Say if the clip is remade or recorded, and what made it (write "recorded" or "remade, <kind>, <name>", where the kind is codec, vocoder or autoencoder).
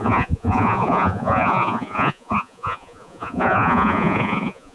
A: remade, vocoder, Vocos